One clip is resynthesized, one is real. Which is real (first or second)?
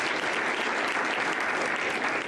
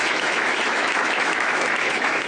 first